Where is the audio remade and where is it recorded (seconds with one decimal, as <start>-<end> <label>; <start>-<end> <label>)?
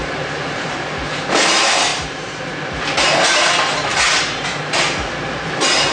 0.0-0.7 remade; 0.7-1.9 recorded; 1.9-2.4 remade; 2.4-5.9 recorded